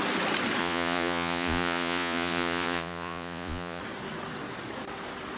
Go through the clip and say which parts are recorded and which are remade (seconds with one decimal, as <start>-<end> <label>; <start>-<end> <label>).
0.0-0.6 recorded; 0.6-3.8 remade; 3.8-5.4 recorded